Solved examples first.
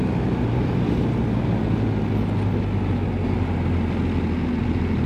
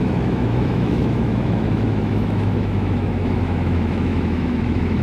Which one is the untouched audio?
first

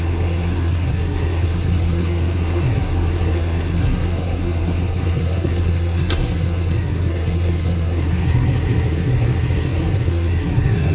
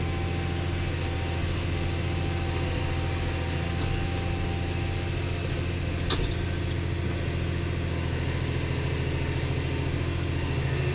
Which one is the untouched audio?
second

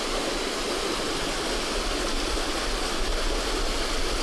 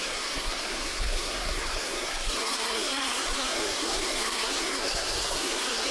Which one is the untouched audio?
first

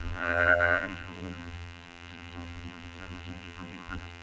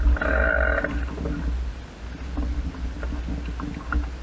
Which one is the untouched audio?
second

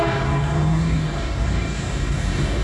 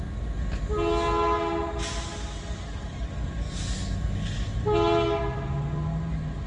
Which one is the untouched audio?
second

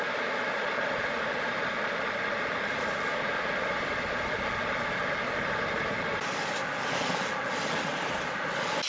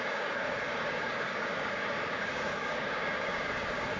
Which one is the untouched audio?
first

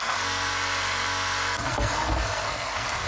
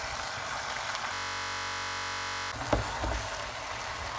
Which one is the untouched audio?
second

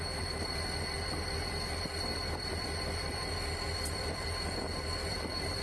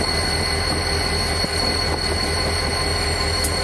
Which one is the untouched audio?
second